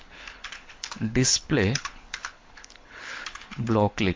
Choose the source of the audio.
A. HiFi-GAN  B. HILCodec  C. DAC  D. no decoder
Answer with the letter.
B